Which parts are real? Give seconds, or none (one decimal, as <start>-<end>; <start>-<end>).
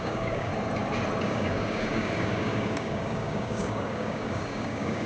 0.5-1.2